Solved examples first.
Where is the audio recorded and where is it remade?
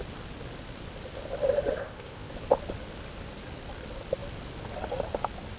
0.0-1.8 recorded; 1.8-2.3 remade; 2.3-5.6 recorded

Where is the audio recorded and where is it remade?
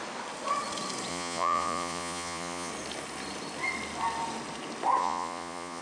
0.0-1.1 recorded; 1.1-2.7 remade; 2.7-5.0 recorded; 5.0-5.8 remade